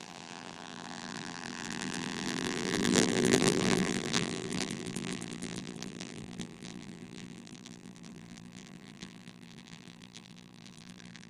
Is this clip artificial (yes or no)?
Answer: yes